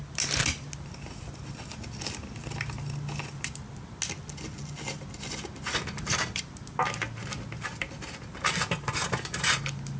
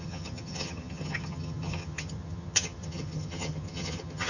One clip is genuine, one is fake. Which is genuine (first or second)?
first